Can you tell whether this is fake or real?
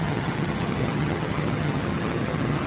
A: fake